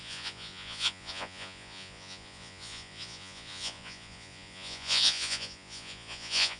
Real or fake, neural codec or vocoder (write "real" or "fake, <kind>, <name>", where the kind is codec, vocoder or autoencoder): fake, vocoder, Vocos